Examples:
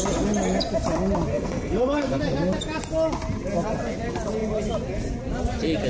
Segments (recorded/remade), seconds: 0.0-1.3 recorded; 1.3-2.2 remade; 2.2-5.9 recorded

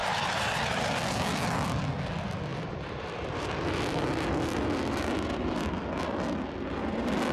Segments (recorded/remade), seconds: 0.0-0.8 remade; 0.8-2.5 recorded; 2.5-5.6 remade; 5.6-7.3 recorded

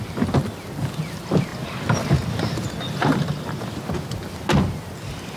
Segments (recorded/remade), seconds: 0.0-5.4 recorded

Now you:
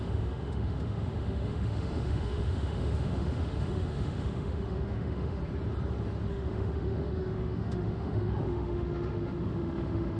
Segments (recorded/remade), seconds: 0.0-5.4 remade; 5.4-6.3 recorded; 6.3-10.2 remade